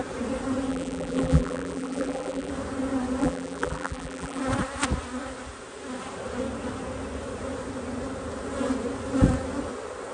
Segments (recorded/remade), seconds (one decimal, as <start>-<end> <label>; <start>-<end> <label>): 0.0-0.7 recorded; 0.7-2.5 remade; 2.5-3.2 recorded; 3.2-4.4 remade; 4.4-10.1 recorded